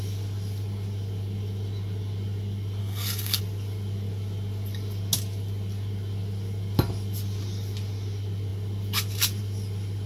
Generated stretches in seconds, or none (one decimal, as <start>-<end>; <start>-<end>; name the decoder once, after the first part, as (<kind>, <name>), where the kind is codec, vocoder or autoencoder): 2.8-3.4 (codec, SNAC)